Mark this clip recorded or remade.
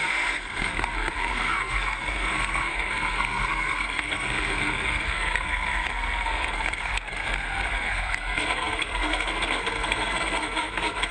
remade